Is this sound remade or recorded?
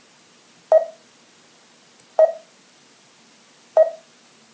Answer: recorded